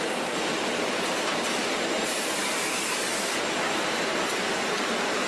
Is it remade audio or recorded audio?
remade